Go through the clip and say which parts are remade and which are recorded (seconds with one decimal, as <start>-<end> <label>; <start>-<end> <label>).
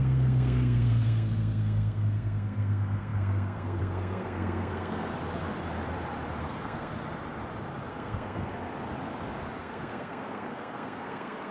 0.0-5.1 remade; 5.1-6.4 recorded; 6.4-6.9 remade; 6.9-7.9 recorded; 7.9-8.5 remade; 8.5-9.6 recorded; 9.6-11.5 remade